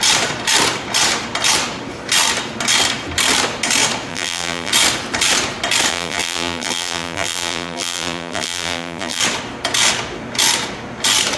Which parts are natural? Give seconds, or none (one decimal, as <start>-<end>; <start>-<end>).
0.0-4.1; 4.7-5.9; 9.2-11.4